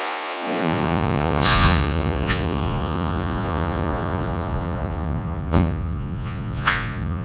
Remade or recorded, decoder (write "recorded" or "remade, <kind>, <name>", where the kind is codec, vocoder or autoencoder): remade, vocoder, Vocos